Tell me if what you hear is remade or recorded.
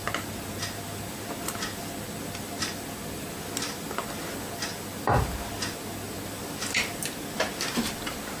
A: recorded